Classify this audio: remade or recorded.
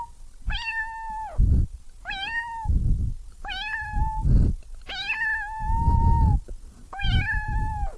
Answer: recorded